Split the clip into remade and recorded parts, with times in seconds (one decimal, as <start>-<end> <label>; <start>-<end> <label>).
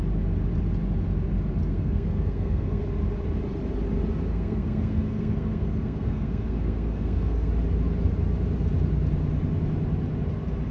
0.0-1.6 recorded; 1.6-2.8 remade; 2.8-4.3 recorded; 4.3-7.5 remade; 7.5-10.7 recorded